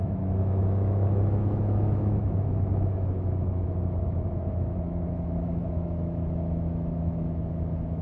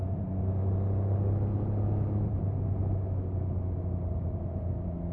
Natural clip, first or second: second